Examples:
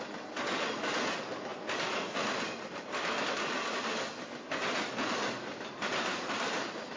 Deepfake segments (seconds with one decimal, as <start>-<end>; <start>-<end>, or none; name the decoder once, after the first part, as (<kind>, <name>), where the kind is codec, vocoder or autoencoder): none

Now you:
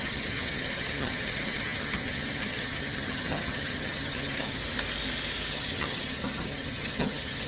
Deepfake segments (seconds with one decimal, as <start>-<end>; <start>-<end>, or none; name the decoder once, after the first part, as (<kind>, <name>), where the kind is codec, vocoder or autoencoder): 0.0-4.6 (vocoder, HiFi-GAN); 5.5-7.5

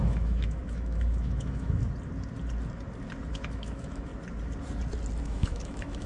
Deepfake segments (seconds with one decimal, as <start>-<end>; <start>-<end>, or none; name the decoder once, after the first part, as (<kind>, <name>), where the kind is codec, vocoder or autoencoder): 0.0-1.8 (autoencoder, DAC-VAE); 3.3-4.1; 5.2-6.1